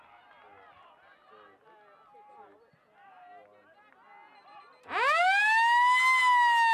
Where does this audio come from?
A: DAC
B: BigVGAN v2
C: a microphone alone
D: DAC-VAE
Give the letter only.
C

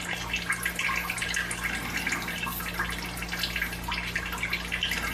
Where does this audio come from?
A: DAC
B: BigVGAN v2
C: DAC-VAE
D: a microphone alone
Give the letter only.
D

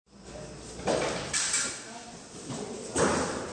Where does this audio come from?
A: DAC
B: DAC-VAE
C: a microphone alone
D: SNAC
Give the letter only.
C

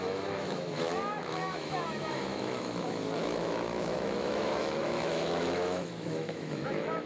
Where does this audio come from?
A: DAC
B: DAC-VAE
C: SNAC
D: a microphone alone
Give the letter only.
B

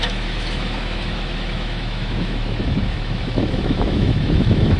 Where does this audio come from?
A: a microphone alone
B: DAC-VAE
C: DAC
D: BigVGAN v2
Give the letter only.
B